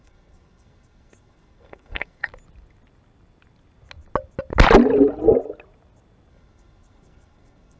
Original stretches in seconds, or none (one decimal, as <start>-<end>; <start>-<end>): 2.3-6.3